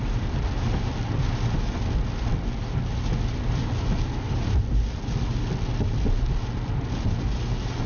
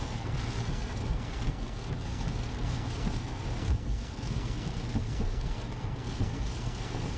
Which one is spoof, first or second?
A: second